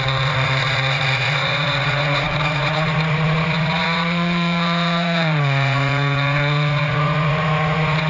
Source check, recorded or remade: remade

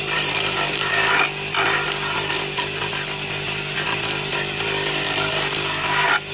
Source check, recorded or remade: recorded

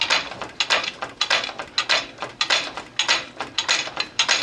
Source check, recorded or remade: recorded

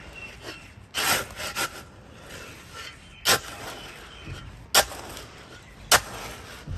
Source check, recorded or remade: recorded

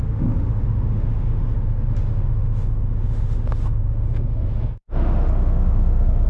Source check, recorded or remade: remade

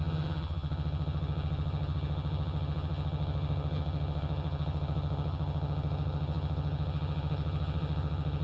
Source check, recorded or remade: remade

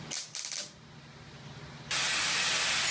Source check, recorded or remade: recorded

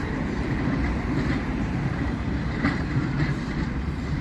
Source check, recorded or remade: remade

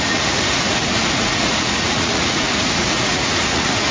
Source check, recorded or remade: remade